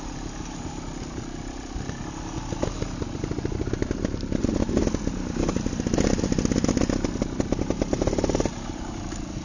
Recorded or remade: recorded